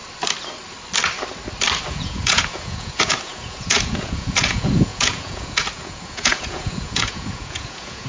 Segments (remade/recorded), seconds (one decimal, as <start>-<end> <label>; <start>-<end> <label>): 0.0-1.9 recorded; 1.9-8.1 remade